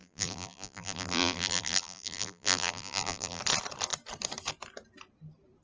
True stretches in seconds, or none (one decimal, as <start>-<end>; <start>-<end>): 3.4-5.6